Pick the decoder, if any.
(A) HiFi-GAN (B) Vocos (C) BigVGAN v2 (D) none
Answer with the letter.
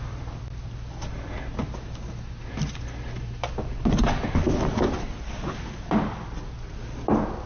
D